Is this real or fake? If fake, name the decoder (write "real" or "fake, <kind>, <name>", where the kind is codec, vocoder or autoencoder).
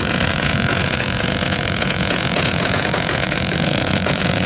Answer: fake, vocoder, Vocos